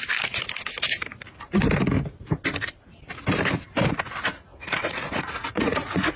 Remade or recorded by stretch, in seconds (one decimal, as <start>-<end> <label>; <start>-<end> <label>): 0.0-4.5 recorded; 4.5-6.2 remade